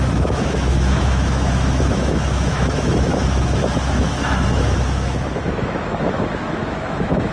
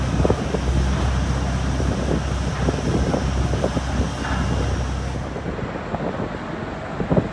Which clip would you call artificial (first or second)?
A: first